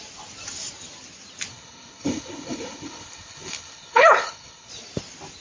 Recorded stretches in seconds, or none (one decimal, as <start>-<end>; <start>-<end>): 0.0-1.5; 4.7-5.4